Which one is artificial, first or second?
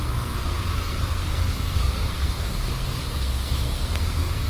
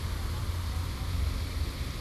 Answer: first